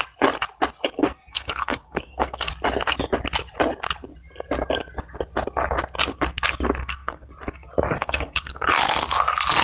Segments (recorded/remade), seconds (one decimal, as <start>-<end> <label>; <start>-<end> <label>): 0.0-1.0 recorded; 1.0-2.5 remade; 2.5-6.8 recorded; 6.8-7.3 remade; 7.3-8.0 recorded; 8.0-8.6 remade; 8.6-9.6 recorded

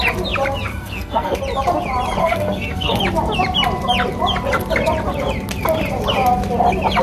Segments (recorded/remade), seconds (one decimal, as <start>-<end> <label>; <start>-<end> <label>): 0.0-0.7 recorded; 0.7-1.4 remade; 1.4-2.2 recorded; 2.2-3.0 remade; 3.0-7.0 recorded

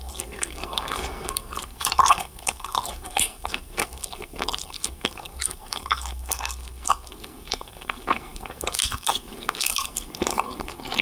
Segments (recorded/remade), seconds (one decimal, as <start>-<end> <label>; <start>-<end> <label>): 0.0-11.0 remade

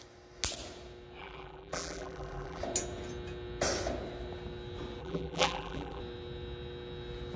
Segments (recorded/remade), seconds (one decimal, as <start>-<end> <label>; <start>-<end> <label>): 0.0-1.2 recorded; 1.2-2.6 remade; 2.6-5.0 recorded; 5.0-6.0 remade; 6.0-7.4 recorded

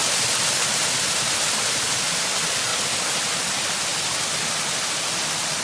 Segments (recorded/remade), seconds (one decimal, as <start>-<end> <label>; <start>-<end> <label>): 0.0-2.0 remade; 2.0-3.9 recorded; 3.9-4.8 remade; 4.8-5.6 recorded